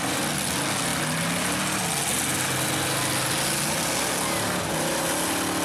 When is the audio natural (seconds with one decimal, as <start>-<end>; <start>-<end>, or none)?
0.0-5.6